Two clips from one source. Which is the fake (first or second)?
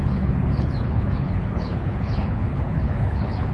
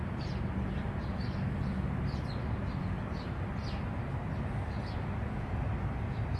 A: first